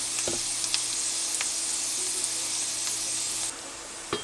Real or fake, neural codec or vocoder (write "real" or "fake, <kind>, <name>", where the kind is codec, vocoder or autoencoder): real